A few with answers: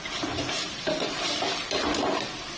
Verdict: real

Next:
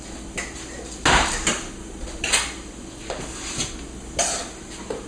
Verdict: real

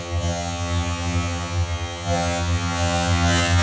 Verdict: fake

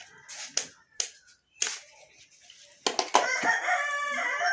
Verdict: real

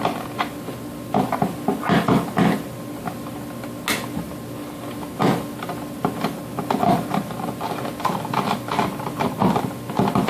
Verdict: real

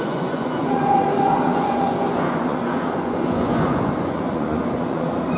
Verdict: fake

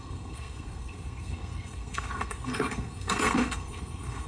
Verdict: fake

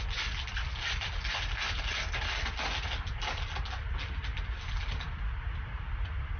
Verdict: real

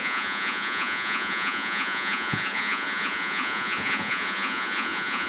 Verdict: fake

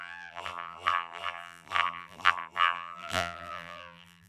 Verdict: fake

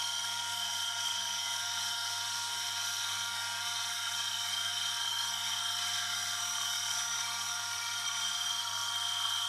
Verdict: fake